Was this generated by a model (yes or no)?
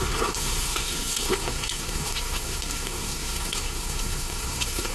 yes